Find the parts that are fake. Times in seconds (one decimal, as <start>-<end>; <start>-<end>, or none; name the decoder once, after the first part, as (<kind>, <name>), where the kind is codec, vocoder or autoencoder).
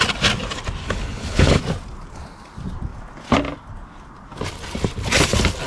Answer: 0.8-1.6 (codec, HILCodec)